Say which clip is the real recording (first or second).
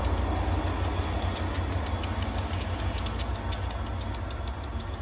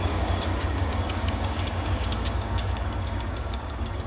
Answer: first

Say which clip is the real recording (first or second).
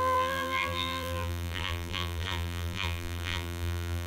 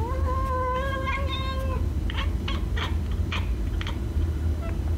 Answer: second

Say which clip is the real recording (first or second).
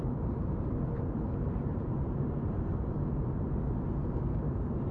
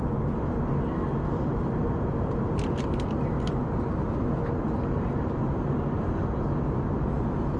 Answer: second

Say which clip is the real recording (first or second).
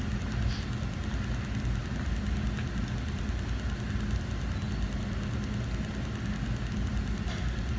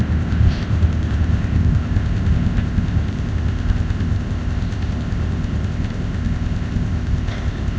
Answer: first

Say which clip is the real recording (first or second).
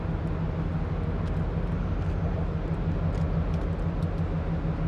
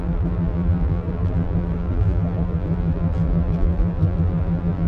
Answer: first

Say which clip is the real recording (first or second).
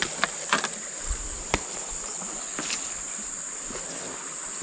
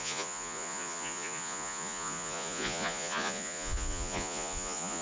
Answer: first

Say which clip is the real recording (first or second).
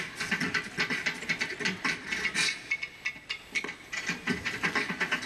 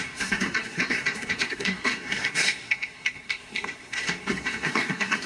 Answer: first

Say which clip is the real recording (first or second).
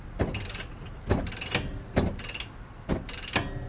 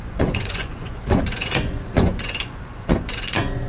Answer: first